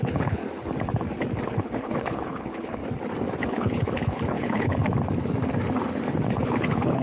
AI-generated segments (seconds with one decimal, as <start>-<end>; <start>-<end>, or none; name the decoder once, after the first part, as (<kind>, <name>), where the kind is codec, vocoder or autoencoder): 0.0-0.4 (codec, HILCodec); 1.5-2.8; 3.5-4.8; 6.3-7.0